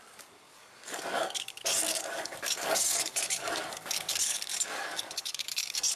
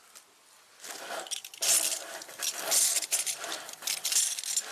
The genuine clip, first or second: second